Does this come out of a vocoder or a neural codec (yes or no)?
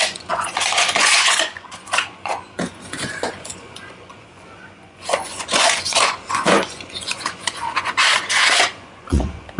yes